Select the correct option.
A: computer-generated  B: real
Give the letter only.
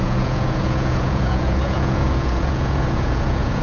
A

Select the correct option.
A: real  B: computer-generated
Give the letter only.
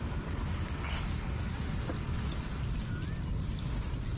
A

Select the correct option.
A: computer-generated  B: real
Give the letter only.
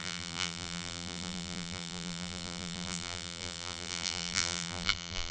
A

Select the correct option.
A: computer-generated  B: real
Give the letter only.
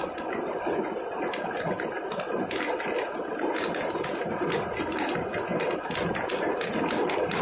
B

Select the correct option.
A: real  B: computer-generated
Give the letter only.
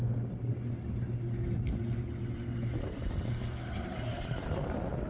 A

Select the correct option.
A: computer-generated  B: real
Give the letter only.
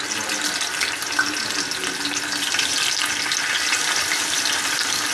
B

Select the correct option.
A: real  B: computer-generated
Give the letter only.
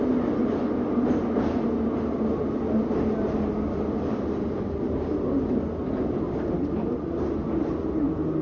A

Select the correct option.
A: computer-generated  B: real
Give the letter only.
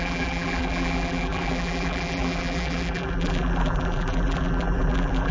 A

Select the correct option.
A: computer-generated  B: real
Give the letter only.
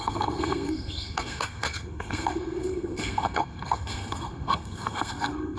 A